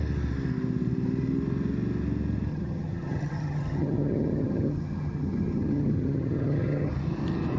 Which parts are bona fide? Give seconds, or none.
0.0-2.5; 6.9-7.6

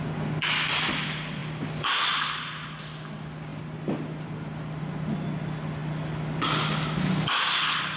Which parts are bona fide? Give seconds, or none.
0.0-8.0

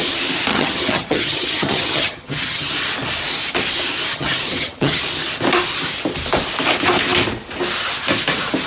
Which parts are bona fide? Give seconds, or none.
0.0-0.5; 2.7-4.1; 5.0-8.7

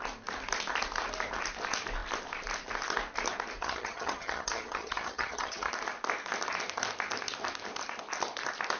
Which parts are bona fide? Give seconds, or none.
0.0-3.6; 5.7-8.8

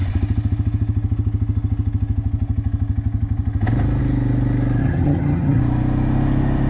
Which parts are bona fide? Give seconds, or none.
0.0-4.8; 5.6-6.7

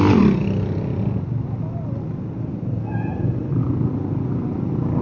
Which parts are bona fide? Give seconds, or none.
0.0-5.0